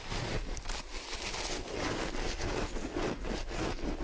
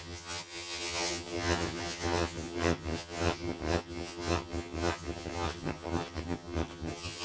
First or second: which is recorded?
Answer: first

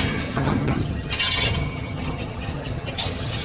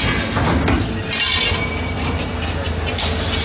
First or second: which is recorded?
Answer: second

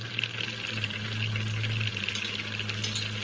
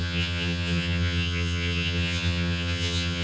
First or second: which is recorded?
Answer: first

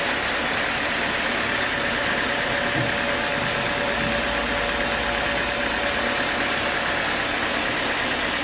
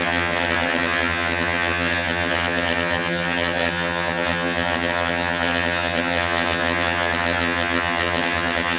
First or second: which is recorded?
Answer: first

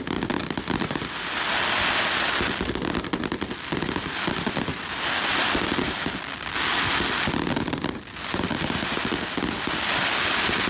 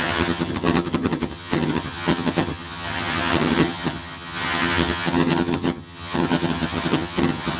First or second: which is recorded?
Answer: first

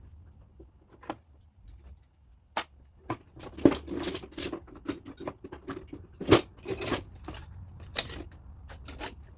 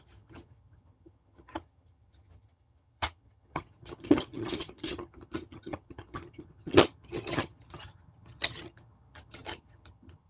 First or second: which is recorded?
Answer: first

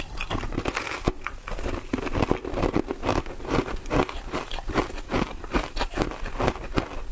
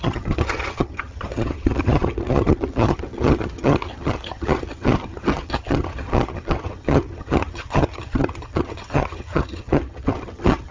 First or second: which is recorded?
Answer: first